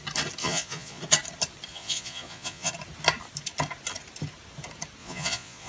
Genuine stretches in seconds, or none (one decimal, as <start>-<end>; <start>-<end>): 0.0-0.4; 1.0-1.7; 2.7-5.0